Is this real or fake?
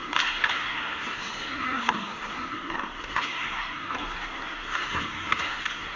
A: fake